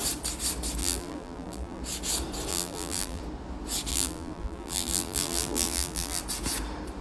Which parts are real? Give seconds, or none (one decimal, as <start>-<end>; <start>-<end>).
0.0-0.8; 1.8-2.5; 3.2-3.9; 6.2-7.0